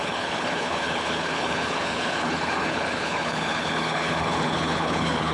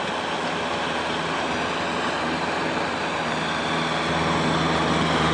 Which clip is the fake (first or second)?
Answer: first